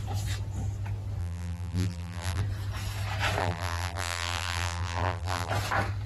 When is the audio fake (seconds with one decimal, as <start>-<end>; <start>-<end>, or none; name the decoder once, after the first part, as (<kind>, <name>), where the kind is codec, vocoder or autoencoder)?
1.2-2.4 (vocoder, BigVGAN v2); 3.4-5.5